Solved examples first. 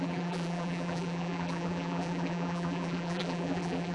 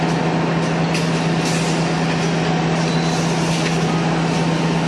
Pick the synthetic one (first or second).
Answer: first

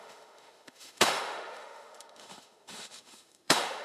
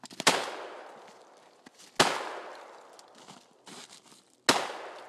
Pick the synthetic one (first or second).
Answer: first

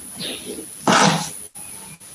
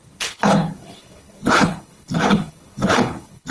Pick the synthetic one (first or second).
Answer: second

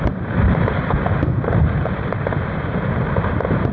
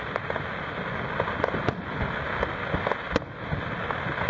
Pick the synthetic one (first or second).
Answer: first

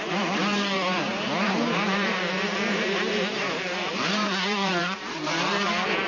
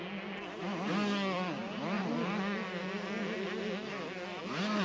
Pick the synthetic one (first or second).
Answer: first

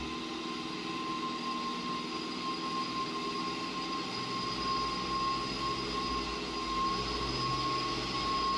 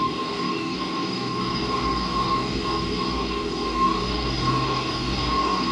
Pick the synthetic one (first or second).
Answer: second